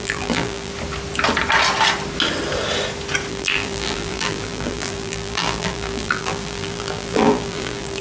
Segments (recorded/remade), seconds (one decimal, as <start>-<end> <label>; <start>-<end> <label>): 0.0-0.7 remade; 0.7-3.3 recorded; 3.3-8.0 remade